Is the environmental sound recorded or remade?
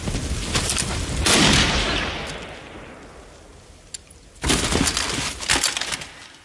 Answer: recorded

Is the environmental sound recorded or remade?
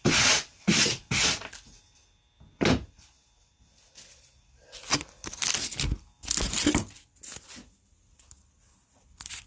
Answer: recorded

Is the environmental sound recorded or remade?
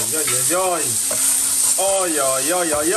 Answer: recorded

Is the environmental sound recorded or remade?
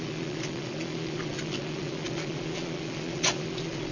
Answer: remade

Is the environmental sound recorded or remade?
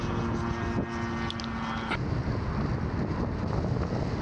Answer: recorded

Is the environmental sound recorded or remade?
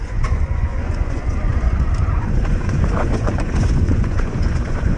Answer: remade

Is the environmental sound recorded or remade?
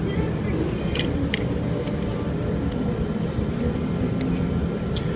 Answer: recorded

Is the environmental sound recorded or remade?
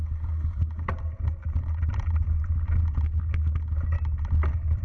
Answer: recorded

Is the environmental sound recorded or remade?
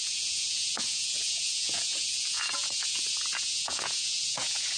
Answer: remade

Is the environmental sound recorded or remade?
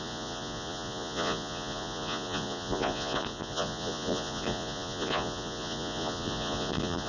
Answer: remade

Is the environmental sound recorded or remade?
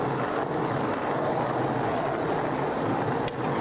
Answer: recorded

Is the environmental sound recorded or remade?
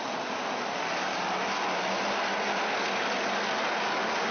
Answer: recorded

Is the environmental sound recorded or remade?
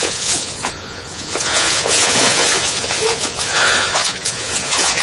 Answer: remade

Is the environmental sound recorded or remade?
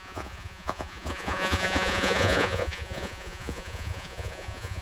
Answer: remade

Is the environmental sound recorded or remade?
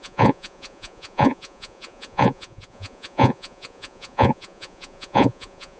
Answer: remade